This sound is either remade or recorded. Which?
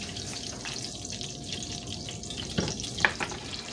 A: recorded